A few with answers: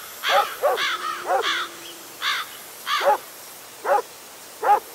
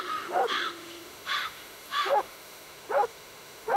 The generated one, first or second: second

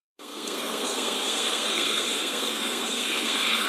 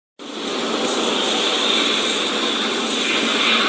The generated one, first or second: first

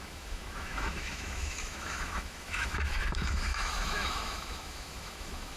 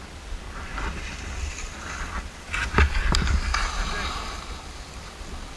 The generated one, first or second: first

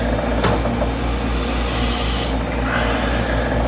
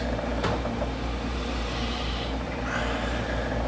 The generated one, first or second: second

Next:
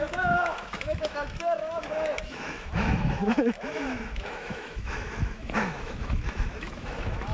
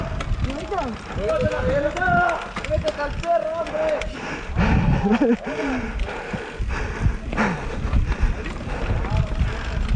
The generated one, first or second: first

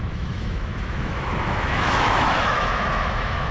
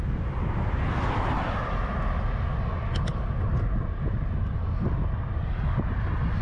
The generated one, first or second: first